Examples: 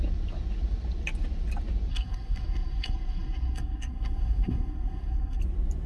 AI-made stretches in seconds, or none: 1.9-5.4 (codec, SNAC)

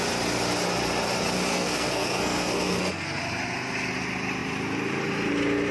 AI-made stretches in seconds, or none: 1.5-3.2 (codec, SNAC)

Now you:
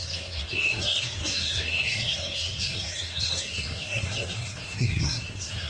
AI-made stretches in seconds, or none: 0.0-5.7 (codec, SNAC)